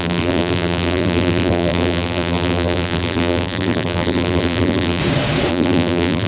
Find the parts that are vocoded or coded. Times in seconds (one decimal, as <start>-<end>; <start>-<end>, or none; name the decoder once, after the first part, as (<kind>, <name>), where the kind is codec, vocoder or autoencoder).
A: 0.0-5.0 (vocoder, BigVGAN v2); 5.5-6.3